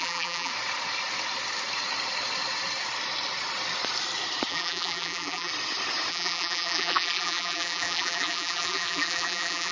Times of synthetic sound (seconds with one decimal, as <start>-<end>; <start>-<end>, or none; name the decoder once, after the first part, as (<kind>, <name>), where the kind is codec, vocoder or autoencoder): 0.0-0.5 (vocoder, BigVGAN v2); 4.5-5.5; 6.1-9.7

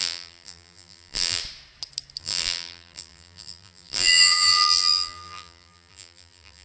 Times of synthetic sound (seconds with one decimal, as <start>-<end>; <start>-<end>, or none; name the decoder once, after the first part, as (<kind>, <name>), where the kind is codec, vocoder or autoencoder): 0.0-1.4 (vocoder, BigVGAN v2); 2.2-6.6

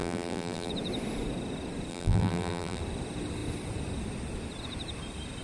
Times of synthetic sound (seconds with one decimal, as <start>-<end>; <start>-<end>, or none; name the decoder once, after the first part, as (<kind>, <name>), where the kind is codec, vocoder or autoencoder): 0.0-0.7 (vocoder, BigVGAN v2); 1.9-2.8

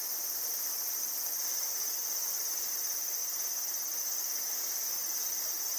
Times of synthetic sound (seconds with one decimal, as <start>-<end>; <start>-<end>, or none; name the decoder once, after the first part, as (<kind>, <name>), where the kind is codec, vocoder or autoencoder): 0.0-3.2 (vocoder, BigVGAN v2); 4.0-5.8

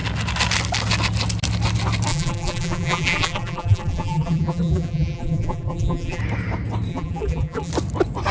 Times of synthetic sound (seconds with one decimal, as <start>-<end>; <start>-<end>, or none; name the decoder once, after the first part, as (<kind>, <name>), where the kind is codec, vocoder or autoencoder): 2.1-6.2 (vocoder, BigVGAN v2); 6.9-7.7

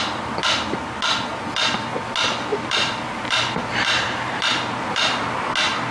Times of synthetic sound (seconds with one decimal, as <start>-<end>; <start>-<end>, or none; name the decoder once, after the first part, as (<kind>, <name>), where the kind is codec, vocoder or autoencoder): 2.5-4.4 (vocoder, BigVGAN v2)